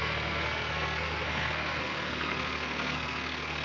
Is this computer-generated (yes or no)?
yes